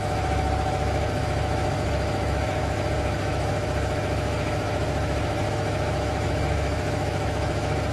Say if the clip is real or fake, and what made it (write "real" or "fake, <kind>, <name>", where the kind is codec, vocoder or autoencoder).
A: fake, autoencoder, DAC-VAE